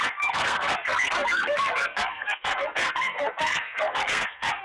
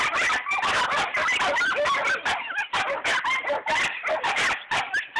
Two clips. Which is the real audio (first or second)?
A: second